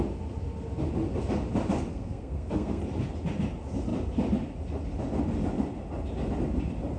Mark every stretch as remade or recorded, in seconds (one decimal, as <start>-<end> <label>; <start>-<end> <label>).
0.0-1.9 recorded; 1.9-2.8 remade; 2.8-7.0 recorded